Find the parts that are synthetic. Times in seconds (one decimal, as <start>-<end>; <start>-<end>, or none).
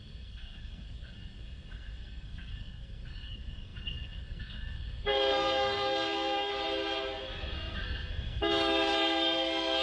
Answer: 0.0-6.5; 7.2-9.8